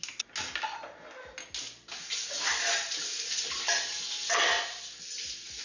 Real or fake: real